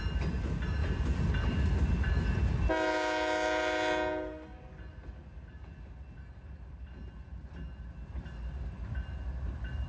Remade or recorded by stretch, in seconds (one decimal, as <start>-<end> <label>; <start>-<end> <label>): 0.0-9.9 recorded